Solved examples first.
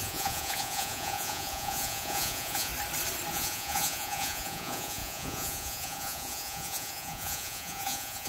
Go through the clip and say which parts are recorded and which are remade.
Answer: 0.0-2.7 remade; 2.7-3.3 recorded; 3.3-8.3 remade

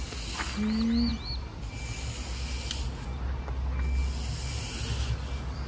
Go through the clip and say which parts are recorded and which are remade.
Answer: 0.0-5.7 recorded

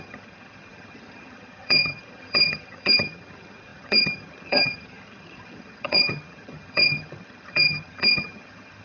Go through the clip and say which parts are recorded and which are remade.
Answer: 0.0-8.8 remade

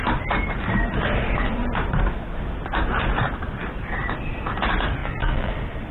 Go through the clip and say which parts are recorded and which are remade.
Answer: 0.0-5.0 recorded; 5.0-5.5 remade; 5.5-5.9 recorded

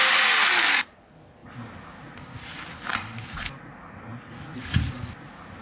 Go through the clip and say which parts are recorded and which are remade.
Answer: 0.0-5.6 recorded

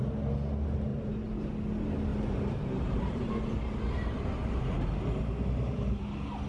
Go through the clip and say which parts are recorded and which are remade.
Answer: 0.0-0.9 recorded; 0.9-1.4 remade; 1.4-2.1 recorded; 2.1-3.3 remade; 3.3-4.4 recorded; 4.4-6.0 remade; 6.0-6.5 recorded

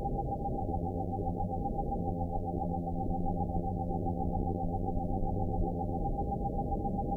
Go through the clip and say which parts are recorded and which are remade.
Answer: 0.0-0.6 recorded; 0.6-1.6 remade; 1.6-2.0 recorded; 2.0-6.0 remade; 6.0-7.2 recorded

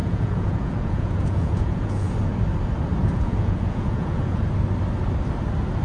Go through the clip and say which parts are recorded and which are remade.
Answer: 0.0-2.1 remade; 2.1-3.0 recorded; 3.0-4.4 remade; 4.4-5.8 recorded